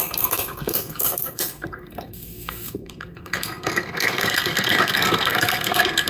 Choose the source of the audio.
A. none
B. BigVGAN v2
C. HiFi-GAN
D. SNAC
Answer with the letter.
D